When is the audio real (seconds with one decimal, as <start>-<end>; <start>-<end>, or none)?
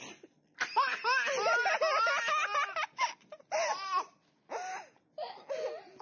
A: 0.0-3.3; 4.7-6.0